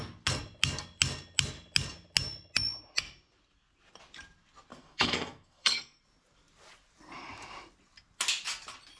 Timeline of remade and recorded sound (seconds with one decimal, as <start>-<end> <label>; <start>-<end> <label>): 0.0-4.7 recorded; 4.7-6.0 remade; 6.0-9.0 recorded